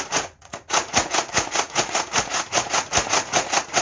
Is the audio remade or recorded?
remade